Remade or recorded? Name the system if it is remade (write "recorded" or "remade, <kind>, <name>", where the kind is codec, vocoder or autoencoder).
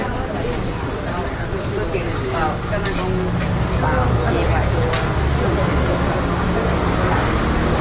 recorded